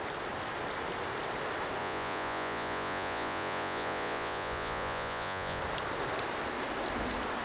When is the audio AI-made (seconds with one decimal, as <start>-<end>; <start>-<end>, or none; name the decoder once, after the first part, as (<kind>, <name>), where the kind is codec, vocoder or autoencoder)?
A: 1.8-5.6 (vocoder, Vocos)